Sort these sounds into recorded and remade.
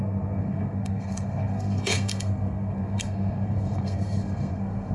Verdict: remade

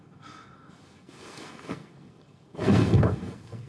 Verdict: remade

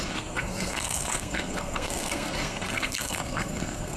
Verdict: remade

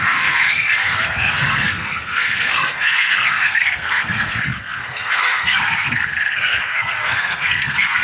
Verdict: remade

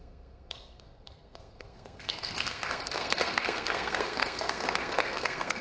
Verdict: remade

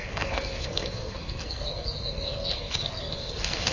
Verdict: remade